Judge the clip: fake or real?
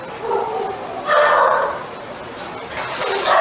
real